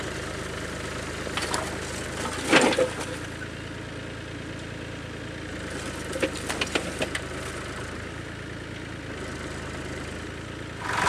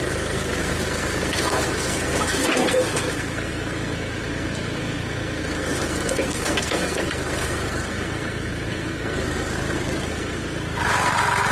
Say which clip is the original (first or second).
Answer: first